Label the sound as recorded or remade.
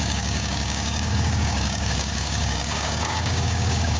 remade